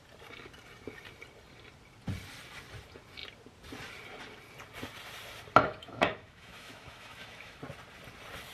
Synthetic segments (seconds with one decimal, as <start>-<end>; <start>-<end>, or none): 5.6-7.6